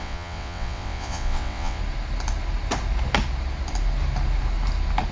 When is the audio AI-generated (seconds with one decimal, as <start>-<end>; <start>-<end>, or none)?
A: 0.0-1.8